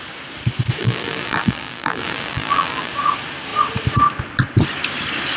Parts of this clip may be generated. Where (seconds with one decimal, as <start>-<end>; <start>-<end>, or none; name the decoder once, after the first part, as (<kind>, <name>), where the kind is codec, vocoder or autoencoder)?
0.8-2.9 (vocoder, BigVGAN v2)